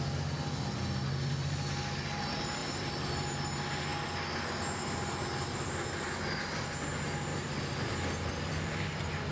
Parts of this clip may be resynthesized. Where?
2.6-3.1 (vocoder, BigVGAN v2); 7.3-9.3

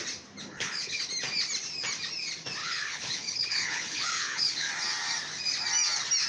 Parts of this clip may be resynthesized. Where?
0.4-1.0 (codec, HILCodec); 2.6-4.7